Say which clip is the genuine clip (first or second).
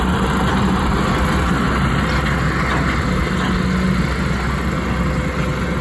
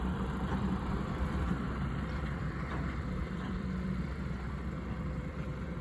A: first